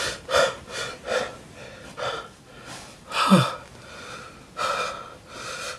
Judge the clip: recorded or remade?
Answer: recorded